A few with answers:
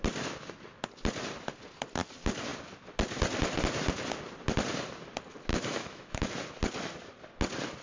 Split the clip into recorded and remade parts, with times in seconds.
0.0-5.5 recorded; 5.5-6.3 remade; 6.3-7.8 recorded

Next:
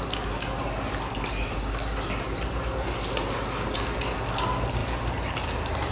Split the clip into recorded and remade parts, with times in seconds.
0.0-4.8 recorded; 4.8-5.9 remade

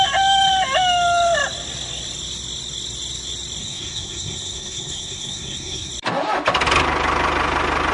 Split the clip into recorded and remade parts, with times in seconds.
0.0-3.6 recorded; 3.6-5.9 remade; 5.9-7.9 recorded

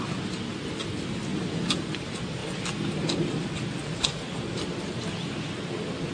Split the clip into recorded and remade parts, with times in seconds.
0.0-6.1 recorded

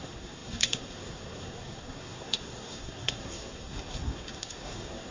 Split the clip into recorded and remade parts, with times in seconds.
0.0-5.1 remade

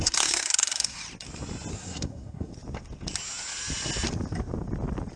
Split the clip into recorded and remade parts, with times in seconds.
0.0-1.0 remade; 1.0-1.7 recorded; 1.7-2.5 remade; 2.5-5.2 recorded

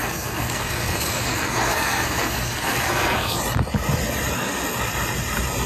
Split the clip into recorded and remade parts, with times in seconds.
0.0-3.4 remade; 3.4-5.7 recorded

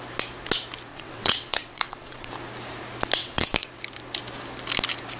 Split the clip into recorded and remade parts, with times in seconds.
0.0-0.9 recorded; 0.9-2.3 remade; 2.3-3.2 recorded; 3.2-3.7 remade; 3.7-5.2 recorded